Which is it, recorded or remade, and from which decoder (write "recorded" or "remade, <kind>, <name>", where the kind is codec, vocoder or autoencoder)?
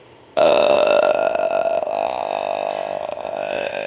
remade, codec, ZipCodec